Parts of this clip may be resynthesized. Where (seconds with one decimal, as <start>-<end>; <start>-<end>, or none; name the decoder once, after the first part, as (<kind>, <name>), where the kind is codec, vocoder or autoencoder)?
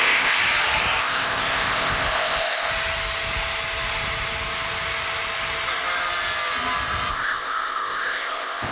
0.0-0.4 (codec, ZipCodec); 1.0-2.7; 7.1-8.7